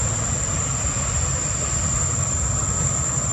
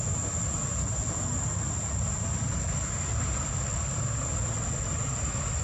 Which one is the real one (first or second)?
second